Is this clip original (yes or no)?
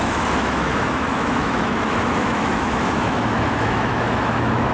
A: no